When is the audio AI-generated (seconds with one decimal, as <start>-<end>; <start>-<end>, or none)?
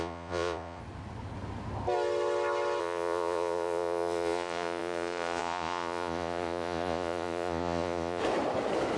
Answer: 0.0-0.8; 2.8-8.2